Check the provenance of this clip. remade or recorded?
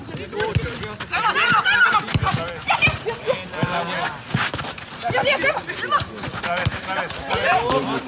recorded